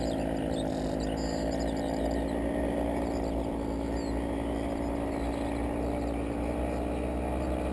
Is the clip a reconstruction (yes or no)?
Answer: no